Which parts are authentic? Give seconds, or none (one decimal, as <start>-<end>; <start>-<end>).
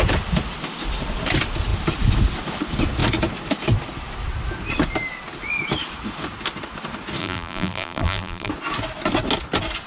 0.0-7.2; 8.5-9.9